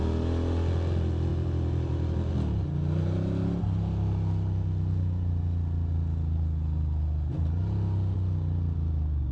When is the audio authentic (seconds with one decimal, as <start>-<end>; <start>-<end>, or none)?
0.0-1.3; 2.3-9.3